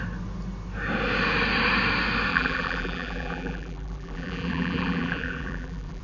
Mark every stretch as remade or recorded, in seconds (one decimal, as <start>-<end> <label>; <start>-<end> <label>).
0.0-2.3 recorded; 2.3-6.0 remade